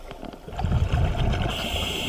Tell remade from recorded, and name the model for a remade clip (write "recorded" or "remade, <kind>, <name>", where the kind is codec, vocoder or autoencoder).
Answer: recorded